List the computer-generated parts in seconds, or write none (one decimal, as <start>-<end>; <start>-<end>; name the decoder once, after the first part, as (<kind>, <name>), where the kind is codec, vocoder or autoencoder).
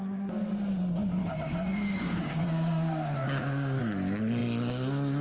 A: 1.2-3.8 (codec, DAC)